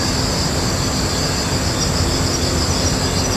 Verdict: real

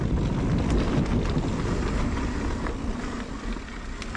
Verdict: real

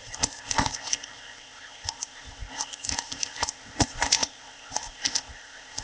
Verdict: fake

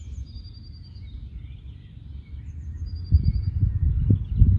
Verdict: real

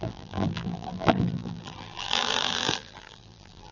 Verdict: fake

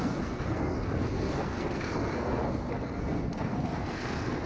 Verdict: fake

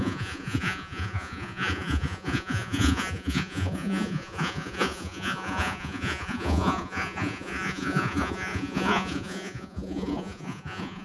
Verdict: fake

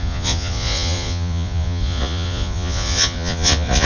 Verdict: fake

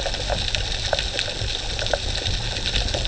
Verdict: real